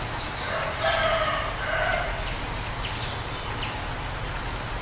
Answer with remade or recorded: recorded